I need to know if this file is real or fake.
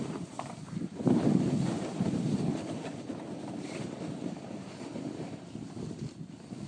real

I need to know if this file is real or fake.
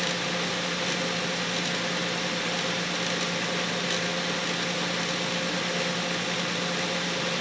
real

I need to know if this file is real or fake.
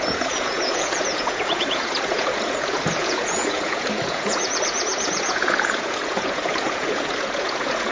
fake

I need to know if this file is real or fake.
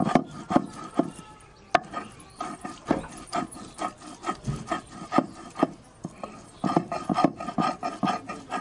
real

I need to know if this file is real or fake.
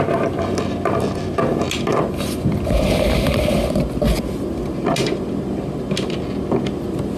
real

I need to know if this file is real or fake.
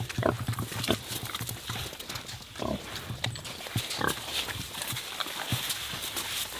real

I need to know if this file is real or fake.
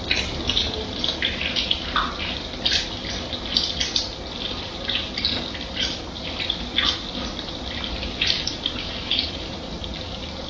real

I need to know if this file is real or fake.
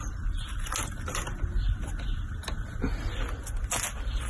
real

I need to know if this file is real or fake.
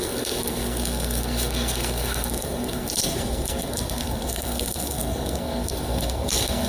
fake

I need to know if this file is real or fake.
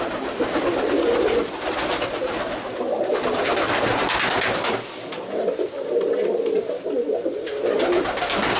real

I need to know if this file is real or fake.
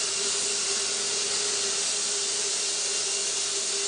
real